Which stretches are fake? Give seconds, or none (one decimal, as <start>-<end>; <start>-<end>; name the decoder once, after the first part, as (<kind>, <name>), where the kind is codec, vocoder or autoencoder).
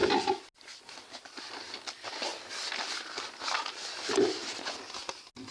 none